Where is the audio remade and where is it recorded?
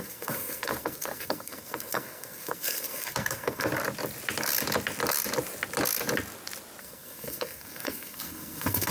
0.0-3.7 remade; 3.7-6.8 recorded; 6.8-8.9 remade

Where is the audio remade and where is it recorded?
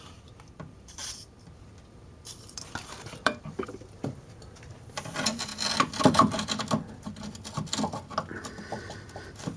0.0-1.0 remade; 1.0-1.5 recorded; 1.5-5.5 remade; 5.5-8.7 recorded; 8.7-9.6 remade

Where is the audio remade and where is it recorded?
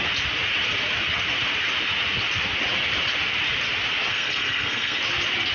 0.0-4.1 recorded; 4.1-5.0 remade; 5.0-5.5 recorded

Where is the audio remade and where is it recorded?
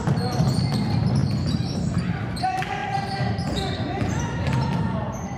0.0-5.4 recorded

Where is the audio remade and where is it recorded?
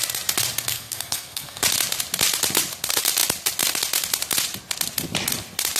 0.0-0.7 recorded; 0.7-1.6 remade; 1.6-5.8 recorded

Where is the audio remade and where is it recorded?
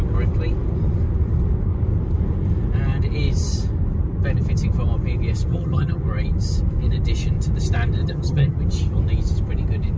0.0-5.5 recorded; 5.5-6.0 remade; 6.0-8.0 recorded; 8.0-8.6 remade; 8.6-10.0 recorded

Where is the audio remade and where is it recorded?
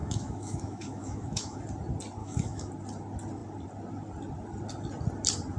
0.0-1.6 remade; 1.6-2.2 recorded; 2.2-2.7 remade; 2.7-5.6 recorded